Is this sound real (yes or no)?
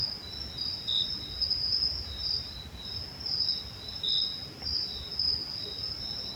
yes